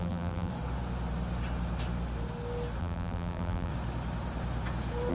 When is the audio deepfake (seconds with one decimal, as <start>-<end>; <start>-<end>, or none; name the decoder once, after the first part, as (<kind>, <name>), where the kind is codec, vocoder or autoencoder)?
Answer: 0.0-0.5 (vocoder, BigVGAN v2); 2.8-3.7